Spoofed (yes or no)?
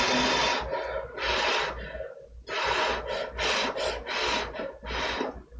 no